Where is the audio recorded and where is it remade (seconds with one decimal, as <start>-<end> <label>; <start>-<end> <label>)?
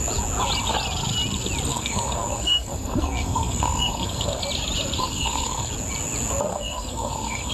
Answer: 0.0-1.7 recorded; 1.7-4.4 remade; 4.4-5.0 recorded; 5.0-5.7 remade; 5.7-6.5 recorded; 6.5-7.5 remade